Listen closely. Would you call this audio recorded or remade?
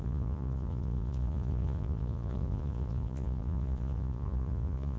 remade